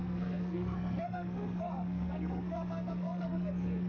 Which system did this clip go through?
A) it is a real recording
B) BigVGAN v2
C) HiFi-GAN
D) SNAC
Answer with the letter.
D